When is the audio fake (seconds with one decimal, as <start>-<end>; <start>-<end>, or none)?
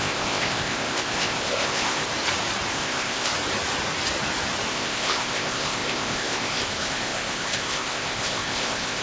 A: 0.0-2.1; 2.7-3.3; 4.7-9.0